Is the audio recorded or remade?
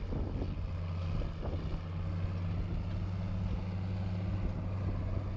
recorded